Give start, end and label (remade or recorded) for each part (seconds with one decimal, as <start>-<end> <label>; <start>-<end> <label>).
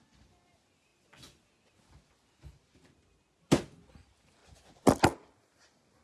0.0-6.0 recorded